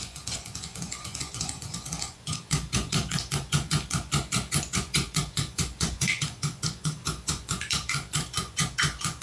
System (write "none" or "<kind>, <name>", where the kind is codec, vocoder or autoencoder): vocoder, Vocos